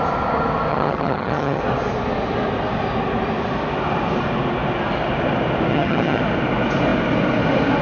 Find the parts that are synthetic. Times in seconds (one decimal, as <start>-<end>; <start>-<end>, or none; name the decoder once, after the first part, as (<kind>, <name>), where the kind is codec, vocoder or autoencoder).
0.7-1.6 (vocoder, HiFi-GAN); 5.7-6.2